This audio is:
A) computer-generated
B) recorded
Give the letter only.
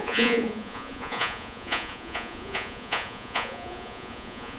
A